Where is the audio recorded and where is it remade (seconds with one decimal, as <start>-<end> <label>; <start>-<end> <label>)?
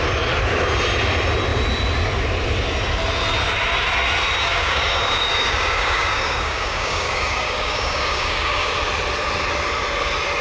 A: 0.0-4.4 recorded; 4.4-8.7 remade; 8.7-10.4 recorded